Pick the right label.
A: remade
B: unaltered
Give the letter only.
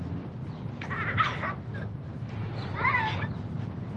B